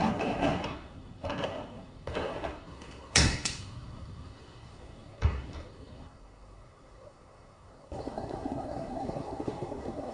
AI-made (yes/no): yes